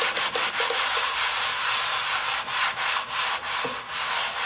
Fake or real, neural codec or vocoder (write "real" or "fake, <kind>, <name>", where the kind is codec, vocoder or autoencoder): real